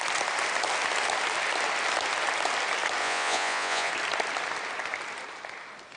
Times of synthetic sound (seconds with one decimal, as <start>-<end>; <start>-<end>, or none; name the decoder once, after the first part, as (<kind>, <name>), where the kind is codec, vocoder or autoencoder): 3.0-3.9 (vocoder, Vocos)